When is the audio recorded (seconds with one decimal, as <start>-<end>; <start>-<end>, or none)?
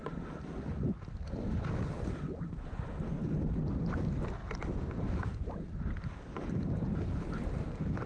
0.0-8.1